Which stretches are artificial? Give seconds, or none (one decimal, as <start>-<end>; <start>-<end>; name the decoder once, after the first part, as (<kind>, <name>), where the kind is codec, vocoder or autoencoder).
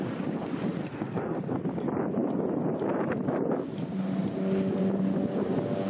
0.8-1.4 (codec, SNAC)